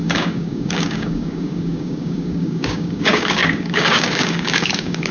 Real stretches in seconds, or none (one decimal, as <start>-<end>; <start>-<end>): none